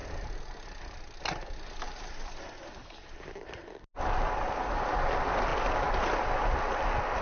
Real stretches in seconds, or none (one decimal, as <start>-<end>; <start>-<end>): 0.0-7.2